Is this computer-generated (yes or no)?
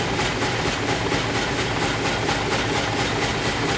no